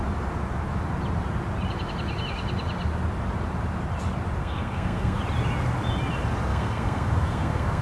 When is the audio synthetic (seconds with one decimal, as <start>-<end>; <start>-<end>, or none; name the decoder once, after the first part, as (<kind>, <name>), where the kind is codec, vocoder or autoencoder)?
4.4-5.2 (codec, SNAC); 6.5-7.8